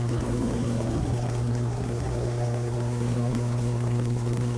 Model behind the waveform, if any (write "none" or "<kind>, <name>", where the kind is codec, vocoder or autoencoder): codec, SNAC